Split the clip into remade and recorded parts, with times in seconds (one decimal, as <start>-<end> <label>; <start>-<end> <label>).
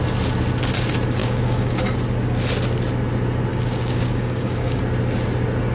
0.0-1.2 recorded; 1.2-1.8 remade; 1.8-3.5 recorded; 3.5-4.8 remade; 4.8-5.7 recorded